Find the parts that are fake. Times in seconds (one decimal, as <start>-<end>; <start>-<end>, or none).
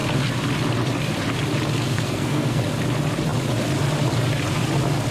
1.9-2.6